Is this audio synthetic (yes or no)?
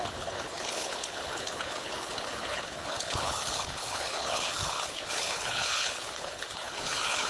yes